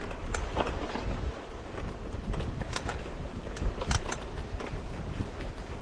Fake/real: fake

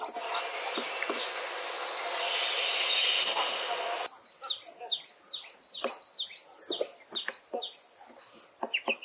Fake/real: real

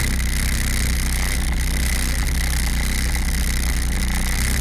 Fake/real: real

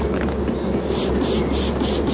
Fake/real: real